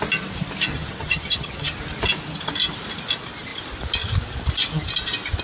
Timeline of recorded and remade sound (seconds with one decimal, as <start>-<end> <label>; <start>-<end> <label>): 0.0-0.7 recorded; 0.7-1.8 remade; 1.8-5.4 recorded